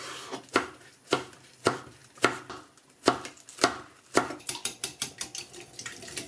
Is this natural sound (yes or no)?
no